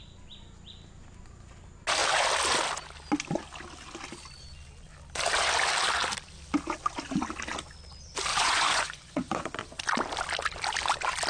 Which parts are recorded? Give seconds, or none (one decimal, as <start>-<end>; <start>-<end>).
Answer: 0.0-8.3; 9.7-11.3